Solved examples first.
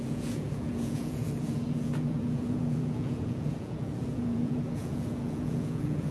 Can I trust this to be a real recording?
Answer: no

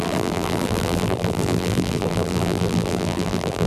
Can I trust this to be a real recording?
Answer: no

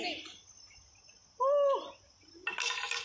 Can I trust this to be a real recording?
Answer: yes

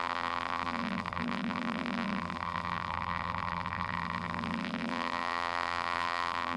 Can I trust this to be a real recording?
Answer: no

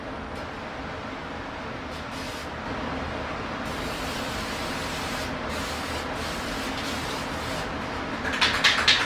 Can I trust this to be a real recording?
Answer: yes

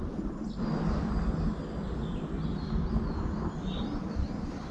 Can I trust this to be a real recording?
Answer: yes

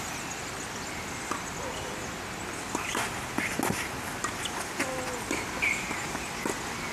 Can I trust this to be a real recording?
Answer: yes